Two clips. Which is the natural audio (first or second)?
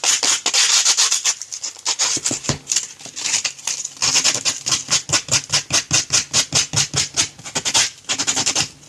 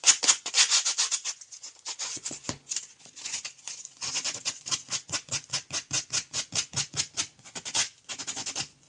first